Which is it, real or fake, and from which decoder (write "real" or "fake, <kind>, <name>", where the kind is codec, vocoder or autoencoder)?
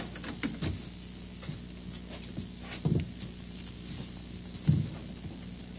real